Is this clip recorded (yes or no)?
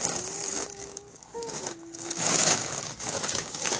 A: no